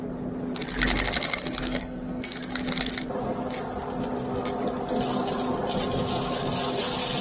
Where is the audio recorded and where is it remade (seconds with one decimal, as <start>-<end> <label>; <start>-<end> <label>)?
0.0-1.6 recorded; 1.6-2.4 remade; 2.4-7.2 recorded